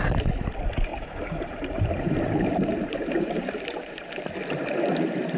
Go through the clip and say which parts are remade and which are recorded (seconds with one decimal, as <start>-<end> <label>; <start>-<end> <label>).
0.0-0.9 recorded; 0.9-4.1 remade; 4.1-5.4 recorded